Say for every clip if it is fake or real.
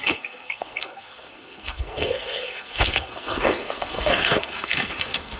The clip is fake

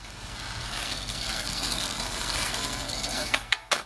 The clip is fake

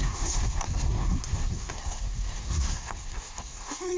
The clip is fake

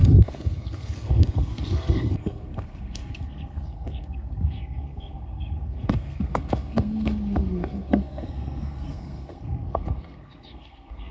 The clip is fake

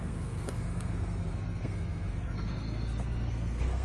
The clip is fake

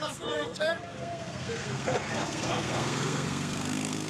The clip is fake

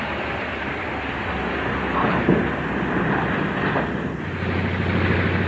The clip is real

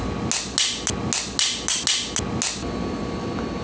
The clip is real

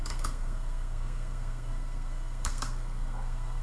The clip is fake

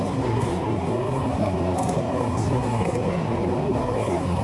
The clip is fake